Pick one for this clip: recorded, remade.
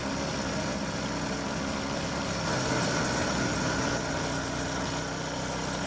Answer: recorded